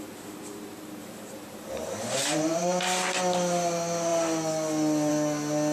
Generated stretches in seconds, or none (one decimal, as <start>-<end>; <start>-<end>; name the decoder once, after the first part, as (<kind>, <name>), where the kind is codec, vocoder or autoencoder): 1.0-2.8 (vocoder, BigVGAN v2)